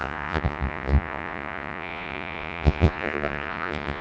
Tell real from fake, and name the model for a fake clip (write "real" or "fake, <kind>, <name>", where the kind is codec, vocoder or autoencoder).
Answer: fake, vocoder, Vocos